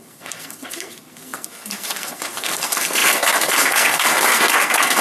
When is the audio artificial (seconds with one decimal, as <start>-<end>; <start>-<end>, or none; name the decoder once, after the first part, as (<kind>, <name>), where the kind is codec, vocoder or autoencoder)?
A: 0.0-5.0 (codec, SNAC)